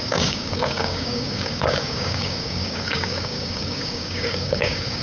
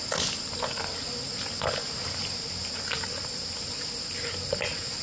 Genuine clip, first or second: second